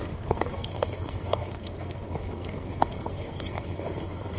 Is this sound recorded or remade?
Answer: remade